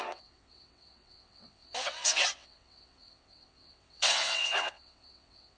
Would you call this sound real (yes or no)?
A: no